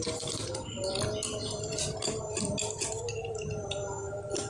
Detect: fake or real real